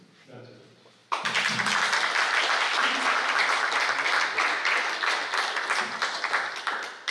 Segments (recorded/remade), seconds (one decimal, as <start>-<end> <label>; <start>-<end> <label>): 0.0-7.1 recorded